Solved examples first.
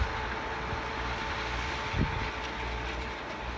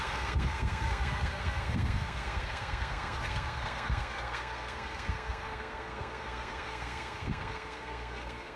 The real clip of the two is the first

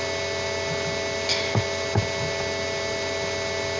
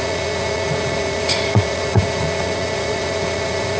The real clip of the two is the first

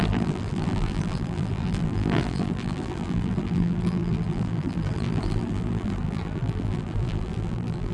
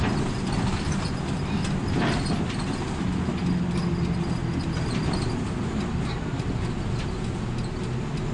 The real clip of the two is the second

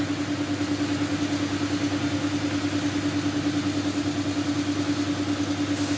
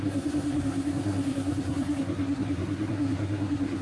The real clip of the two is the first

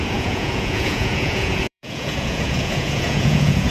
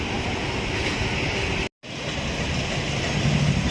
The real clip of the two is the second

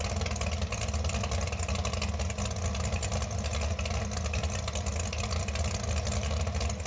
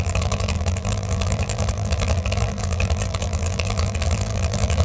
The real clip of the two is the first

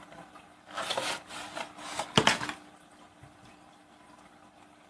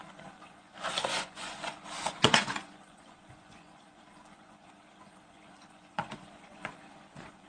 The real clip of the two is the first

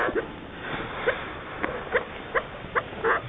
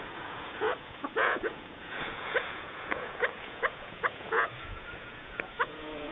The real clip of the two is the first